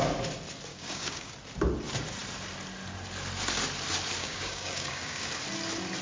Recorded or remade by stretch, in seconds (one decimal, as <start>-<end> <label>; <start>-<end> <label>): 0.0-0.7 recorded; 0.7-1.3 remade; 1.3-4.2 recorded; 4.2-5.3 remade; 5.3-6.0 recorded